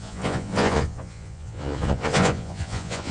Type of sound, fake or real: fake